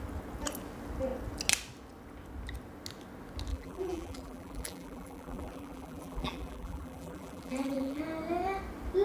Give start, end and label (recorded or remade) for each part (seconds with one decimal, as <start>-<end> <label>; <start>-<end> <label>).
0.0-3.5 recorded; 3.5-8.0 remade; 8.0-9.0 recorded